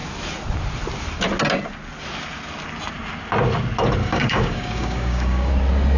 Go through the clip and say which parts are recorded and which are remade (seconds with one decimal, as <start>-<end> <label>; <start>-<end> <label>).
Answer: 0.0-4.0 recorded; 4.0-5.5 remade; 5.5-6.0 recorded